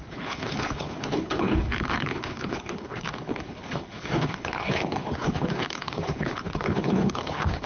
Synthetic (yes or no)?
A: yes